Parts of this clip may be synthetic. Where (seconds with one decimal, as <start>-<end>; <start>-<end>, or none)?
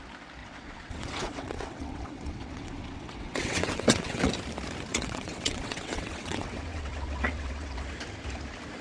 0.4-4.3; 4.9-7.9